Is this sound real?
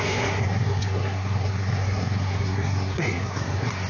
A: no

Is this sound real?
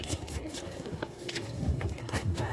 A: no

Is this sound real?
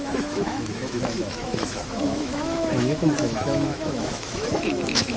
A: no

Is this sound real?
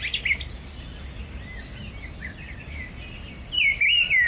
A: yes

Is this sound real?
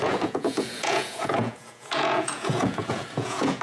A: no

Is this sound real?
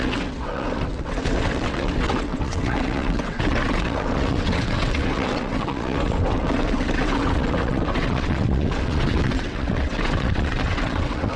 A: no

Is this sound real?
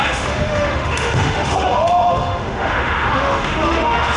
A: no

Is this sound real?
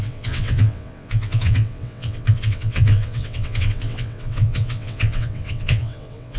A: no